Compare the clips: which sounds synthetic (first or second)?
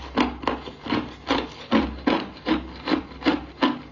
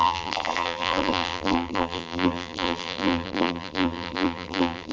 second